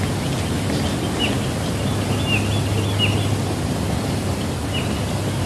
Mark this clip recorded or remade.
recorded